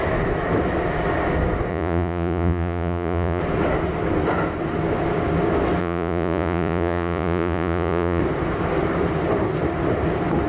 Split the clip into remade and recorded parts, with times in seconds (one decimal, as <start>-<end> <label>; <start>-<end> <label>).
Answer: 0.0-1.7 recorded; 1.7-3.4 remade; 3.4-5.8 recorded; 5.8-8.2 remade; 8.2-10.5 recorded